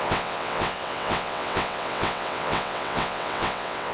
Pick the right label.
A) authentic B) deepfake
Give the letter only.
B